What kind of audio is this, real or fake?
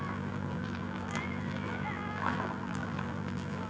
fake